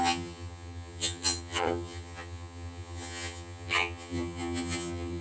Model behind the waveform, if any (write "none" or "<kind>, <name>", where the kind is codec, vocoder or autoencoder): vocoder, HiFi-GAN